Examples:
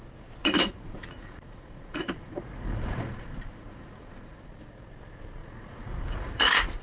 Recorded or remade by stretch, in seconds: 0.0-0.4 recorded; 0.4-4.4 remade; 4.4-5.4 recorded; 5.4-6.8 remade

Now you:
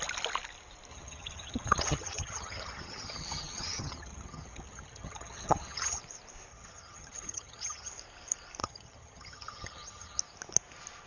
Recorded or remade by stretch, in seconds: 0.0-0.9 recorded; 0.9-6.0 remade; 6.0-6.5 recorded; 6.5-7.9 remade; 7.9-8.6 recorded; 8.6-10.2 remade; 10.2-11.1 recorded